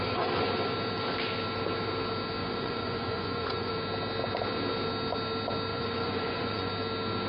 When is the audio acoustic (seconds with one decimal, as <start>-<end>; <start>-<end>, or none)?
0.0-2.4; 3.7-5.7; 6.7-7.3